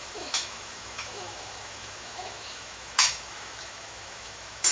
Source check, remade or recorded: remade